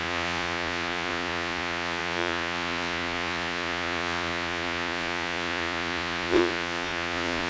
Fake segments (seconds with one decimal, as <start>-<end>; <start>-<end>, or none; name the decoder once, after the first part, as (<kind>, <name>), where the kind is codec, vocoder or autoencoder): 0.0-7.5 (vocoder, Vocos)